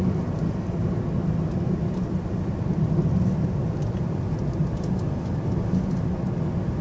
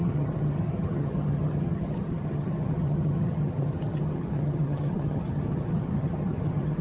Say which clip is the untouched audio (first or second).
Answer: first